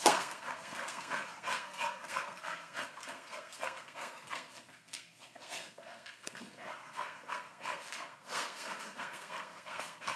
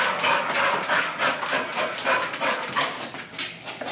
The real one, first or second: second